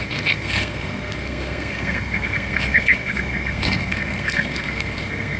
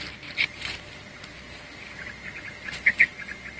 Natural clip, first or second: second